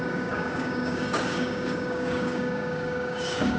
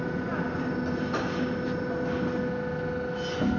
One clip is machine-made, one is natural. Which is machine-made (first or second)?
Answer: first